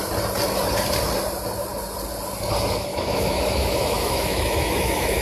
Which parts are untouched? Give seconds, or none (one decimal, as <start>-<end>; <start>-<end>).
0.0-2.9